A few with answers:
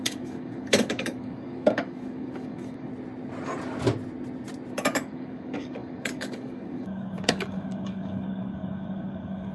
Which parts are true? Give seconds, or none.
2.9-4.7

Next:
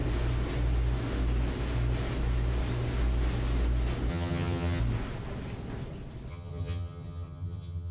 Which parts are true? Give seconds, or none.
0.0-4.1; 4.8-6.3

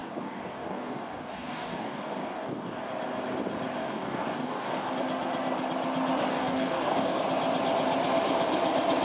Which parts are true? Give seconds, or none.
2.8-3.8; 4.9-6.3; 7.2-9.0

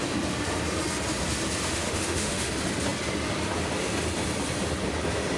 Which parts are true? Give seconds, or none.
0.0-1.7; 2.5-5.4

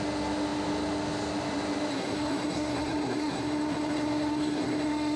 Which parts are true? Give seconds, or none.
0.0-1.9

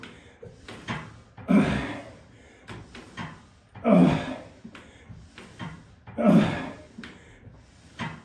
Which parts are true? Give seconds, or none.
0.0-8.2

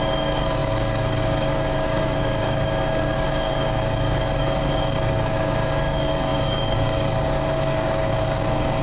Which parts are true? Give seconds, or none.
none